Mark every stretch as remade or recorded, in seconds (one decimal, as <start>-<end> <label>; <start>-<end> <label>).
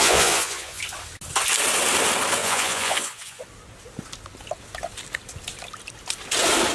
0.0-0.8 remade; 0.8-2.4 recorded; 2.4-3.4 remade; 3.4-6.7 recorded